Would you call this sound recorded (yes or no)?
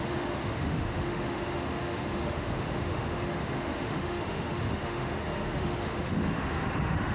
no